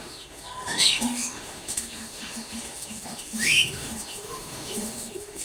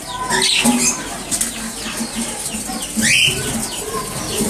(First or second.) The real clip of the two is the second